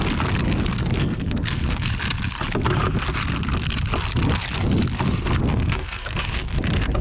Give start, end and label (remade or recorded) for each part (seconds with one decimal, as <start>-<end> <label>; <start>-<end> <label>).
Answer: 0.0-0.8 recorded; 0.8-1.9 remade; 1.9-5.5 recorded; 5.5-6.6 remade; 6.6-7.0 recorded